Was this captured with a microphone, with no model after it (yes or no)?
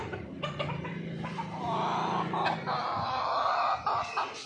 yes